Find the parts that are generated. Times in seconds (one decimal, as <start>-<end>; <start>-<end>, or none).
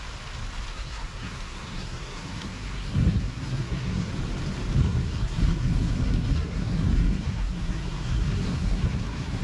0.7-4.1; 4.8-9.4